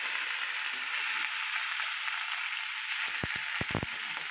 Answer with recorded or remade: recorded